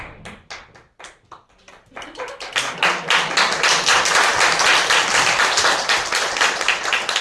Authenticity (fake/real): real